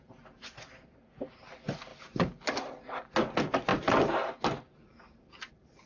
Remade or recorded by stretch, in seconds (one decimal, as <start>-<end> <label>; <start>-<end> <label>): 0.0-5.9 recorded